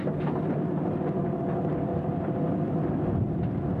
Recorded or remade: remade